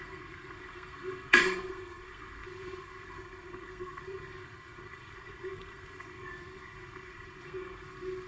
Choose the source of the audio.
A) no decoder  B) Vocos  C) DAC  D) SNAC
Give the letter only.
D